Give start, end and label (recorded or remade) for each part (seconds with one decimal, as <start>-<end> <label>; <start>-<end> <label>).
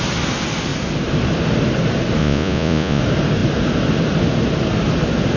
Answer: 0.0-2.2 recorded; 2.2-3.0 remade; 3.0-5.4 recorded